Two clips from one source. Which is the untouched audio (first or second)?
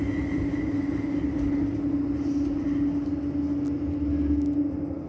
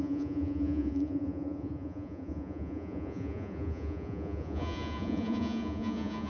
first